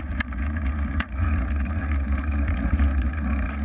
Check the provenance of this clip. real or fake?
fake